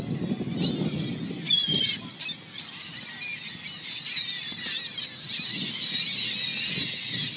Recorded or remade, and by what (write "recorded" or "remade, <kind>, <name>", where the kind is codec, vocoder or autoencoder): recorded